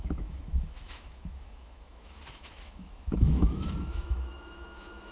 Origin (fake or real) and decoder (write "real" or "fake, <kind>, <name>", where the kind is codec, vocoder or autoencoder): fake, autoencoder, DAC-VAE